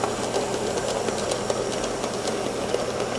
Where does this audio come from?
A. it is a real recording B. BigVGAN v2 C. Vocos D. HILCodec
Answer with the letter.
A